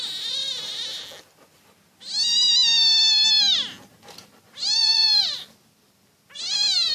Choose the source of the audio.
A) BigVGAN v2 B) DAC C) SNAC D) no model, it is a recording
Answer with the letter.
D